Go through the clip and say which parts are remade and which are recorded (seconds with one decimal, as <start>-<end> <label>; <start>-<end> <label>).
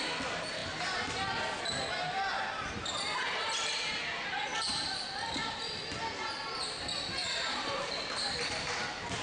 0.0-7.2 recorded; 7.2-7.9 remade; 7.9-9.2 recorded